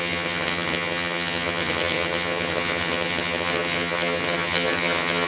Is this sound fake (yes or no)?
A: yes